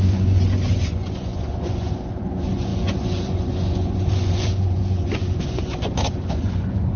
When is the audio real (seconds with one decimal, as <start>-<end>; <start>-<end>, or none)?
none

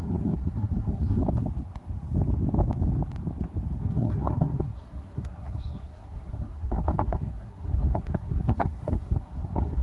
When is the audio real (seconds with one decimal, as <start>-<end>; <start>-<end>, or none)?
1.2-3.8